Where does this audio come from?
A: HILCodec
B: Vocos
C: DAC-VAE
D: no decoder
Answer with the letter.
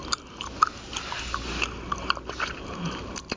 D